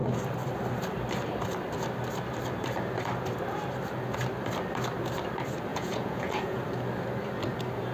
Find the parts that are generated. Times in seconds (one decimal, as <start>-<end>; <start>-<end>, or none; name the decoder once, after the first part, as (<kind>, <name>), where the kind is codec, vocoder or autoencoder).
5.7-6.6 (vocoder, Vocos)